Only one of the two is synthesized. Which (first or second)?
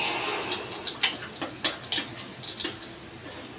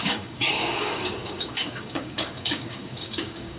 second